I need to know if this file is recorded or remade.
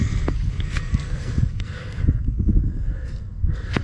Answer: remade